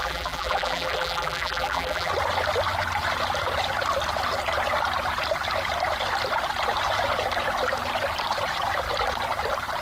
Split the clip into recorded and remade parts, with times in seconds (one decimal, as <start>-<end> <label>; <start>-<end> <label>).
0.0-2.1 remade; 2.1-9.8 recorded